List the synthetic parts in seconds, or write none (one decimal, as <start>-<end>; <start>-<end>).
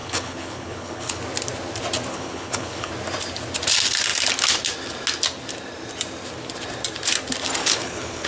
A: 0.0-1.2; 2.1-2.9; 7.6-8.3